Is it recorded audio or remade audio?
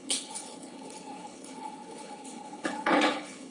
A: remade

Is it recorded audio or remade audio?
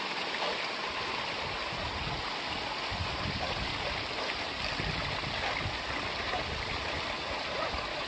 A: recorded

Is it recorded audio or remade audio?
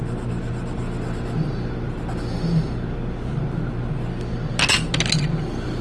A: recorded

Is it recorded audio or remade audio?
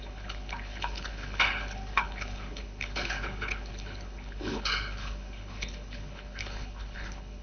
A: remade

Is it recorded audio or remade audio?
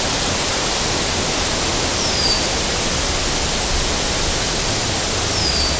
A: recorded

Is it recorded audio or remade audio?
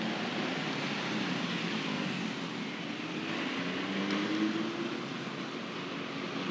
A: recorded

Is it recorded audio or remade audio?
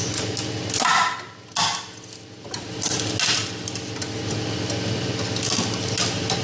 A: recorded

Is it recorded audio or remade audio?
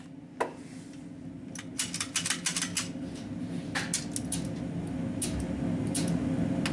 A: recorded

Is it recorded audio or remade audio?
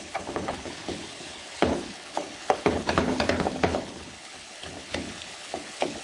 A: remade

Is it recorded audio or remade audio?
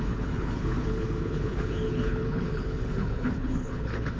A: remade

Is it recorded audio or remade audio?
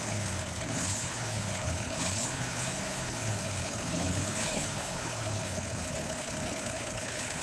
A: remade